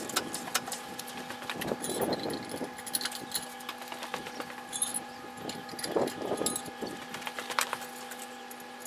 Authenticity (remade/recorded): recorded